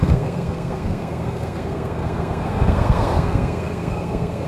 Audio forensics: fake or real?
fake